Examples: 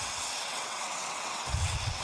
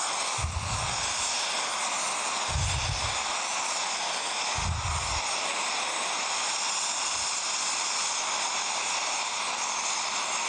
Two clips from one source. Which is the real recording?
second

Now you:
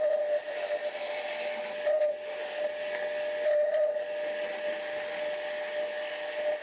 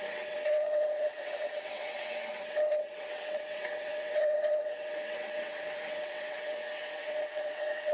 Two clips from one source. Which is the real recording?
first